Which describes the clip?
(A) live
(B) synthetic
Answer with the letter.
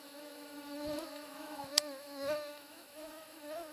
B